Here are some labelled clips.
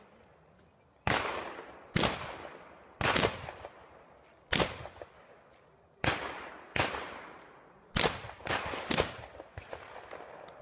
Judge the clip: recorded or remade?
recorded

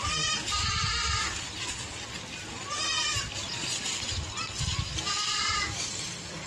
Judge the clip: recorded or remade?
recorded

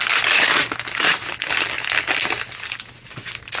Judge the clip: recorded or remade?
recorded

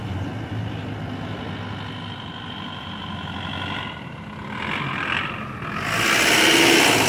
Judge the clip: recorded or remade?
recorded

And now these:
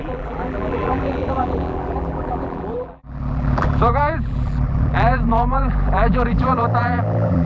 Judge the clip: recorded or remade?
remade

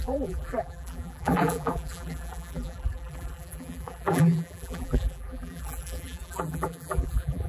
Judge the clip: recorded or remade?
remade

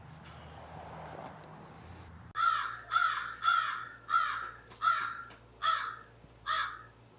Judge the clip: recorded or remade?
recorded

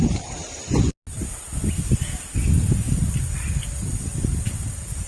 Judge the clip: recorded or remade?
recorded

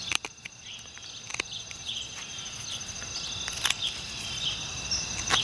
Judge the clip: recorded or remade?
recorded